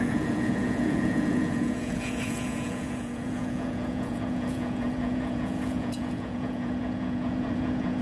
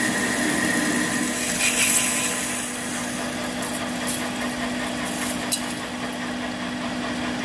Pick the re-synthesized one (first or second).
first